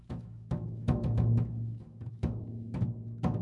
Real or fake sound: fake